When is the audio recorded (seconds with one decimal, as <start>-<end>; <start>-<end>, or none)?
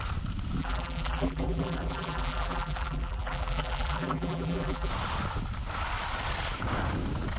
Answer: 0.0-0.6; 4.9-7.4